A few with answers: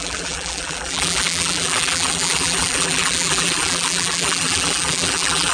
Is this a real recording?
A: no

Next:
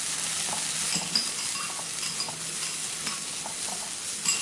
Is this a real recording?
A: yes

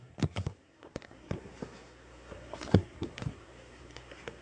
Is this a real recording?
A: no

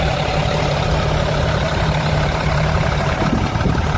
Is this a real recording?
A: no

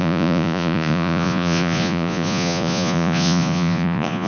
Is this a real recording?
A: no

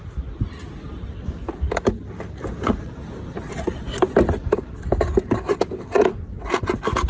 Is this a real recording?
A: yes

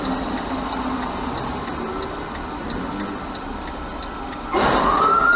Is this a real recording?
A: yes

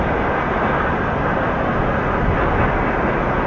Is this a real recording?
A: yes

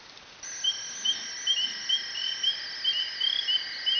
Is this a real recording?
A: yes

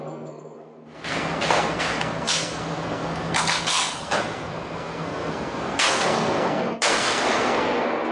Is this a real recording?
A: no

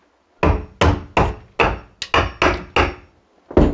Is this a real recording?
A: yes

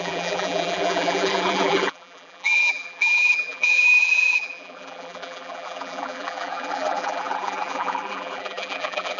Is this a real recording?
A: no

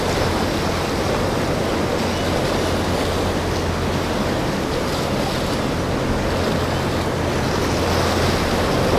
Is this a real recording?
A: yes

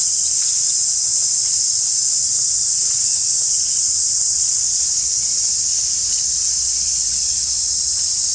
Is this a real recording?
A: no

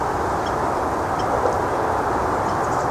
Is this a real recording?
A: yes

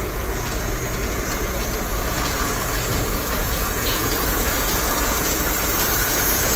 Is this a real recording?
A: no